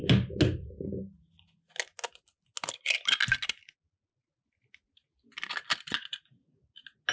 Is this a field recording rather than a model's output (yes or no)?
yes